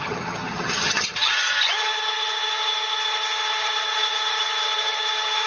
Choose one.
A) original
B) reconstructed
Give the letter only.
B